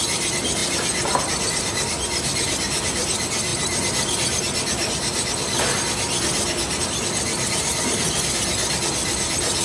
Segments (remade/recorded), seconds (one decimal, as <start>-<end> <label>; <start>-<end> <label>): 0.0-9.6 recorded